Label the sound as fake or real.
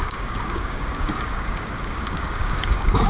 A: fake